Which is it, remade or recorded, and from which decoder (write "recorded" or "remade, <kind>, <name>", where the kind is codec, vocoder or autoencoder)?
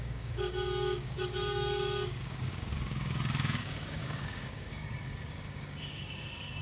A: remade, codec, DAC